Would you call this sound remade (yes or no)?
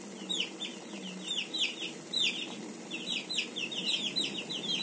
no